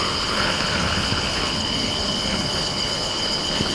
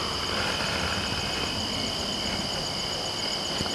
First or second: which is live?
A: second